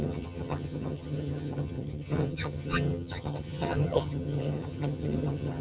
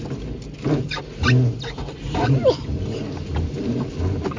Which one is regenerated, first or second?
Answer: first